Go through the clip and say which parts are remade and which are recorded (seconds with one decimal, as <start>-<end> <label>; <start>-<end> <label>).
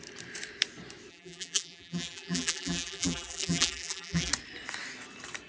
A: 0.0-1.1 recorded; 1.1-4.3 remade; 4.3-5.5 recorded